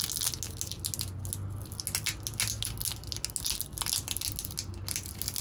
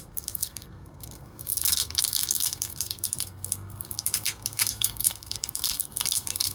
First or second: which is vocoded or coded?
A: second